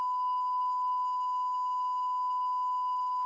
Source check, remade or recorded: remade